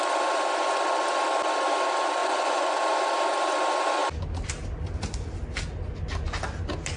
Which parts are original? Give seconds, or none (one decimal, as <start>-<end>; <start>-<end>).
0.0-2.2; 2.8-7.0